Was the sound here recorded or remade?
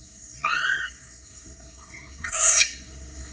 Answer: remade